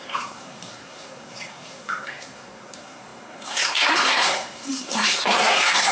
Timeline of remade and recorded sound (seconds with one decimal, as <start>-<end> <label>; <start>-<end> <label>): 0.0-5.9 remade